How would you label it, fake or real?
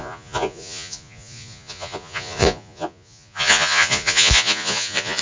fake